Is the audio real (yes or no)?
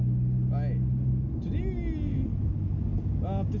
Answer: yes